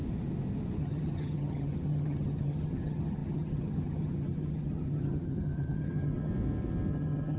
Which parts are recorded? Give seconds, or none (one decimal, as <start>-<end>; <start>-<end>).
0.0-0.8; 6.3-6.9